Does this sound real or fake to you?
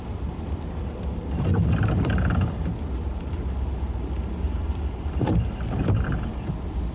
real